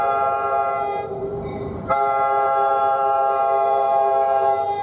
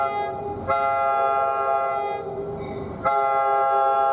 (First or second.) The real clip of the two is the second